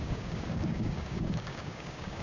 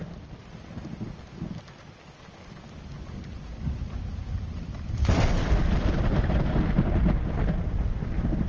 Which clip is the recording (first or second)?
second